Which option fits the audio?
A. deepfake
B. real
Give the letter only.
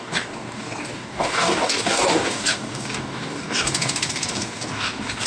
A